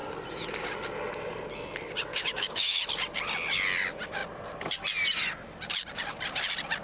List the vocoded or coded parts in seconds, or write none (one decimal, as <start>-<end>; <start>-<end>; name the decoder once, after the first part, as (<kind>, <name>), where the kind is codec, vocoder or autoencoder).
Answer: 2.1-2.8 (autoencoder, DAC-VAE)

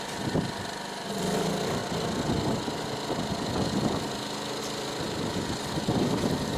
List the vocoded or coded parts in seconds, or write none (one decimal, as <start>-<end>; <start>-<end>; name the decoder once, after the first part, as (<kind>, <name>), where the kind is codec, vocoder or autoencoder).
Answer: none

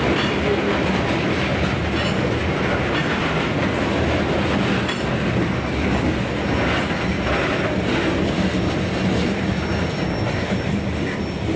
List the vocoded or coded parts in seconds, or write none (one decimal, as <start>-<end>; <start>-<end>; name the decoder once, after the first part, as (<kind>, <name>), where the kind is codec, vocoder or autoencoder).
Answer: none

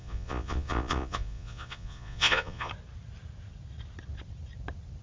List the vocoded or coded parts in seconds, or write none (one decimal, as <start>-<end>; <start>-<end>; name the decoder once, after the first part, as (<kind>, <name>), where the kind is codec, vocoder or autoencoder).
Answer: 0.0-2.7 (vocoder, Vocos)